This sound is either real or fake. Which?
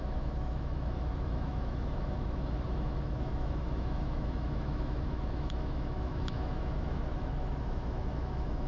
fake